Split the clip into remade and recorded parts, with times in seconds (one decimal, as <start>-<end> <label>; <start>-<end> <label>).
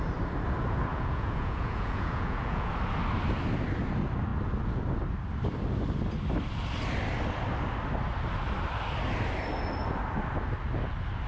0.0-0.9 recorded; 0.9-2.7 remade; 2.7-11.3 recorded